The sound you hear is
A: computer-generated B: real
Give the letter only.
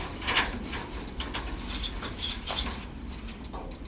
B